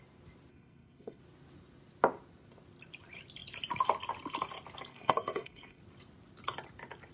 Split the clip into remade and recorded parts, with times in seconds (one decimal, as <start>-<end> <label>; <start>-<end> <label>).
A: 0.0-0.5 recorded; 0.5-1.2 remade; 1.2-4.9 recorded; 4.9-5.8 remade; 5.8-7.1 recorded